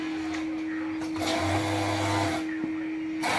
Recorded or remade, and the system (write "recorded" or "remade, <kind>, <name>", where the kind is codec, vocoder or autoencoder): recorded